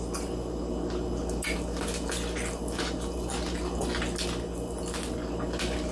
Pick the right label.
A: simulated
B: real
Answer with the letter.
B